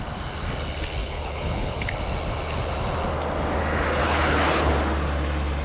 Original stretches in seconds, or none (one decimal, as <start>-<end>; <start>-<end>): 0.0-1.0; 1.9-4.0; 4.7-5.6